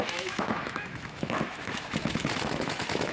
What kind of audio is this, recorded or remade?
remade